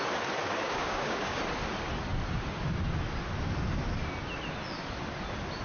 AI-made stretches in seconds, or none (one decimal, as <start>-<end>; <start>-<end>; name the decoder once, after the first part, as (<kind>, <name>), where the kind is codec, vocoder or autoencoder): 0.4-1.4 (codec, DAC)